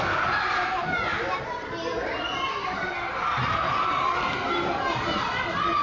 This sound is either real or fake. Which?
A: real